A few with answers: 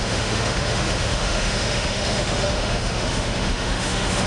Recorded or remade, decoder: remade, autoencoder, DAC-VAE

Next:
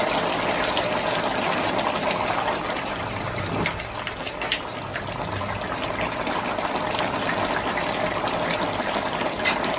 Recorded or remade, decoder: recorded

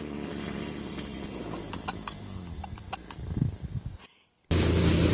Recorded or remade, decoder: recorded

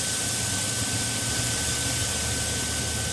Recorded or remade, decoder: recorded